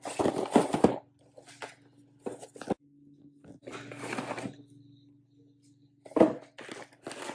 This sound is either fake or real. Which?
real